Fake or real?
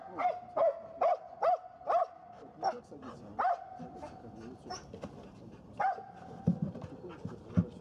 real